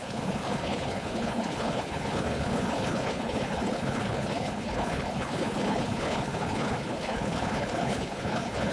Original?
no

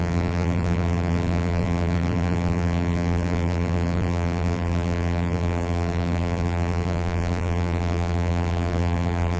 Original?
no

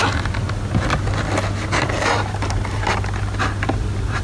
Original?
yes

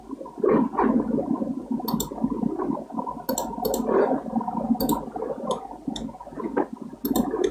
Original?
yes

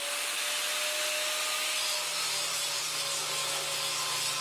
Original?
yes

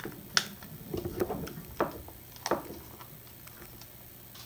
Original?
yes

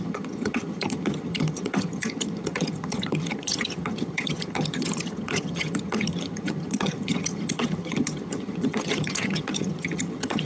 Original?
no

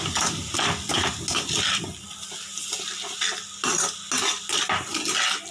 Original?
yes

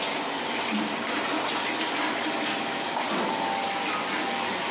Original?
yes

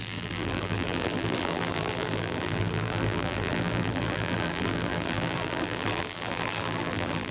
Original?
no